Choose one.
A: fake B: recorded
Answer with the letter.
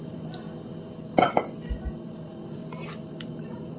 B